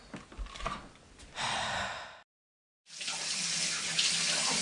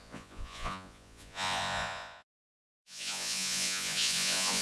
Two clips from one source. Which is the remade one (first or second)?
second